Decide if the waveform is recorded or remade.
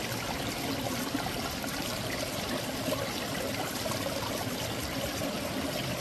recorded